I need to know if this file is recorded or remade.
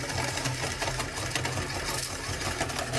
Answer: recorded